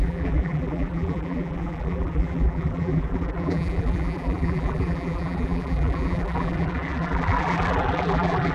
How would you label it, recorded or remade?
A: remade